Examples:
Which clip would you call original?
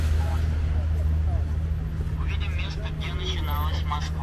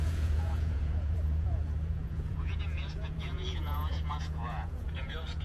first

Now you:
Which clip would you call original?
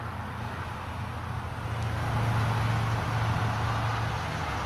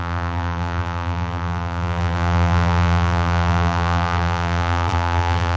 first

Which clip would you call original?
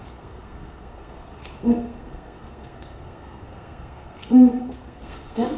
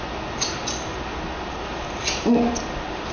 second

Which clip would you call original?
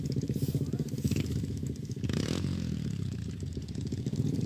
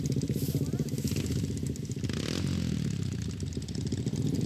second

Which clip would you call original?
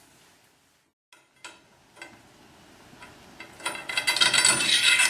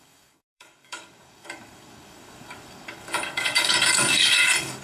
first